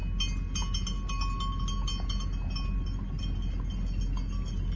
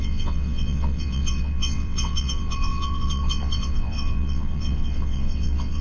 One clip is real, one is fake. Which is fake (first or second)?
second